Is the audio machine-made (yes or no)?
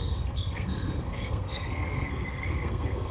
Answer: yes